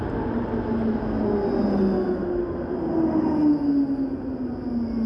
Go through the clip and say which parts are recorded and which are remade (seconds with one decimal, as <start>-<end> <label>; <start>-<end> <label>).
0.0-5.1 recorded